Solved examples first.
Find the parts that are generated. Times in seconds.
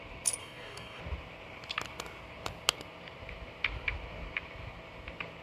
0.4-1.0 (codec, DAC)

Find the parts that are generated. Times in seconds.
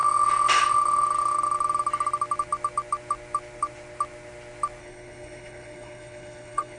4.8-6.8 (codec, HILCodec)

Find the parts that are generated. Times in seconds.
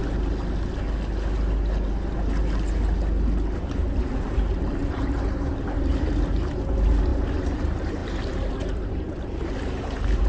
3.6-10.3 (vocoder, BigVGAN v2)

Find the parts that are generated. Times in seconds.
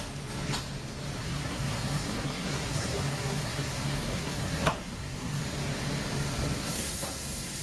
1.2-5.4 (codec, SNAC); 6.6-7.6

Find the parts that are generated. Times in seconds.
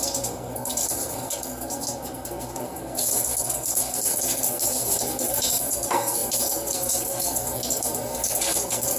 0.0-9.0 (codec, SNAC)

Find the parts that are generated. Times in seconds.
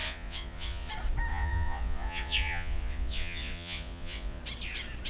0.0-0.9 (vocoder, Vocos); 1.3-4.4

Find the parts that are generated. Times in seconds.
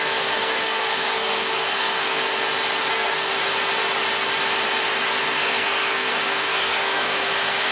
0.0-2.3 (codec, SNAC); 2.9-3.3; 5.2-7.7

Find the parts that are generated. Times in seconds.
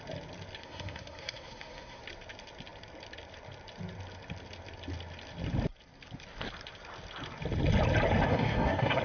0.6-2.0 (codec, SNAC); 8.3-9.0